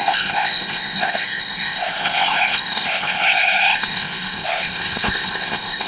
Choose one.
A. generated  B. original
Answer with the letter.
A